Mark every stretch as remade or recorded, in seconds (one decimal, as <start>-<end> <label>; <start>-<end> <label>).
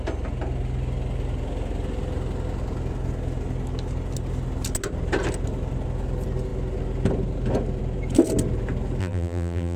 0.0-9.0 recorded; 9.0-9.8 remade